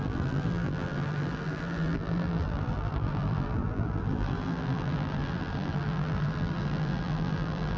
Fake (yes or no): yes